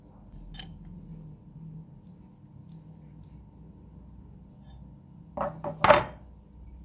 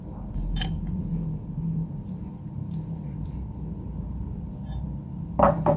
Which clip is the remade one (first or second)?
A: second